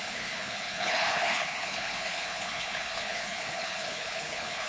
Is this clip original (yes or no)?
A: no